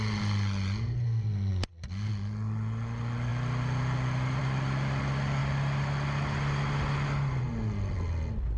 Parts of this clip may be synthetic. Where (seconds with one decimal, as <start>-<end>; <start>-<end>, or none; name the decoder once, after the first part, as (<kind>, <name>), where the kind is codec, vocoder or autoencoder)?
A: none